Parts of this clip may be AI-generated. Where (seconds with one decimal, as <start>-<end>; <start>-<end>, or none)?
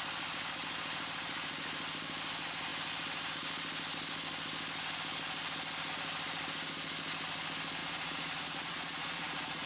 7.8-9.7